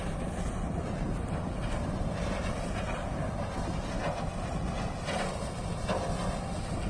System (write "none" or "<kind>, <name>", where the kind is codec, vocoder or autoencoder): none